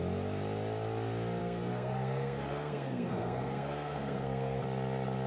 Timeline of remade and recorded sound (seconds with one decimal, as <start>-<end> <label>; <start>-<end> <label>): 0.0-1.4 recorded; 1.4-4.6 remade; 4.6-5.3 recorded